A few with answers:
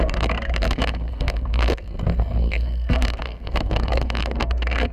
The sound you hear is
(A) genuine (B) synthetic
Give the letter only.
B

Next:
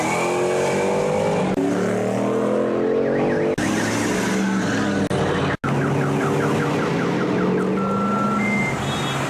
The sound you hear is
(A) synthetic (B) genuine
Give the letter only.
B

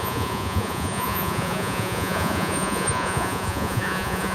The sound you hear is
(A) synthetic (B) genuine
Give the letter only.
A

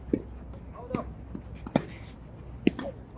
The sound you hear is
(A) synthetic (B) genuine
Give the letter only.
B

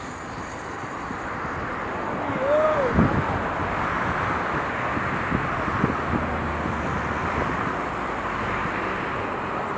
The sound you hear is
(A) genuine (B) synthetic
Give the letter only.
A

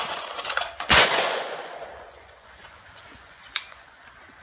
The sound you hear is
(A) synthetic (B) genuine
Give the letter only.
A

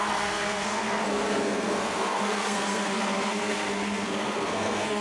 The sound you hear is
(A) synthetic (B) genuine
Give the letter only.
A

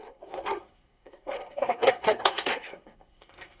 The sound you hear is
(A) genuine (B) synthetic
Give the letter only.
B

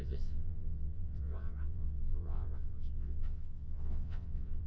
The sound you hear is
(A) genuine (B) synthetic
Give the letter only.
B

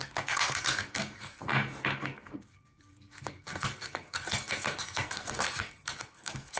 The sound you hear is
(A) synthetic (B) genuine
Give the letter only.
A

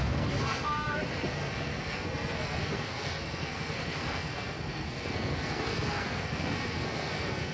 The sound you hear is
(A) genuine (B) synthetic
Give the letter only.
B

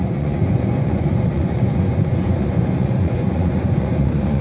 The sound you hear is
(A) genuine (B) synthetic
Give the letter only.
B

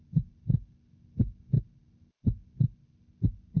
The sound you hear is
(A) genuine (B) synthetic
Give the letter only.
A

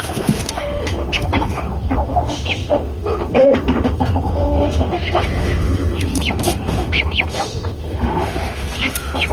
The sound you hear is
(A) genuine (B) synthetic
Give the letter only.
B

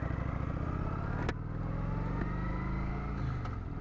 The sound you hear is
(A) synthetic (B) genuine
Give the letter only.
B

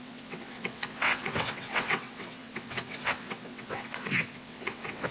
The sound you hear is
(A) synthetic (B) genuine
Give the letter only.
A